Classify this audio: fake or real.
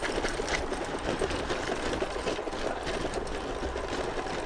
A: real